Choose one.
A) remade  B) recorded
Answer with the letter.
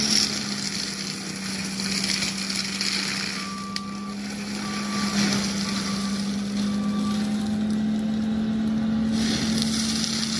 B